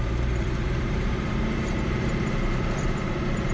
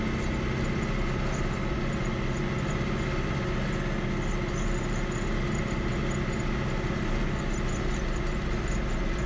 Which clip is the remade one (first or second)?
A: first